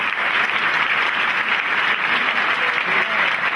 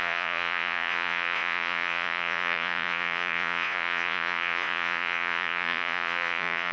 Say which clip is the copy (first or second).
second